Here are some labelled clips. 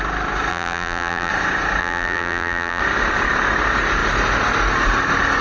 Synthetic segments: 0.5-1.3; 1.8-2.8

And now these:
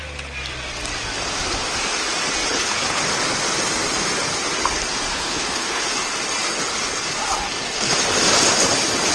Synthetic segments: 2.5-3.0; 5.1-5.8

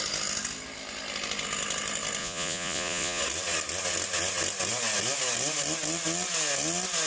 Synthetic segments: 2.2-3.2

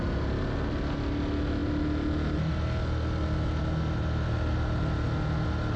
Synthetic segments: none

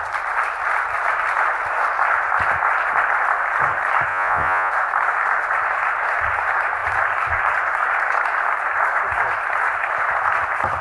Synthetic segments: 4.1-4.7

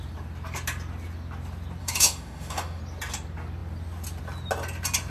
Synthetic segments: 1.8-2.8